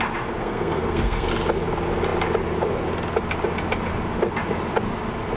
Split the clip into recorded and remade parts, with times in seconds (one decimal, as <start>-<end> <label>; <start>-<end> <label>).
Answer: 0.0-0.4 recorded; 0.4-1.3 remade; 1.3-5.4 recorded